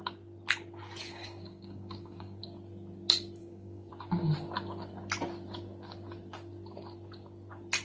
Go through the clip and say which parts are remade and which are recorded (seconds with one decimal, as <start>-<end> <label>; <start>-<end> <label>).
0.0-1.1 recorded; 1.1-2.4 remade; 2.4-3.4 recorded; 3.4-3.9 remade; 3.9-7.8 recorded